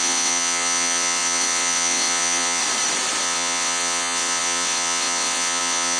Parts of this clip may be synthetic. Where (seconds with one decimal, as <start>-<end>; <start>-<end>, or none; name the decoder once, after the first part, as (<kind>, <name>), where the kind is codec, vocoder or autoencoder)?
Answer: 0.0-2.6 (vocoder, WaveNeXt); 3.2-6.0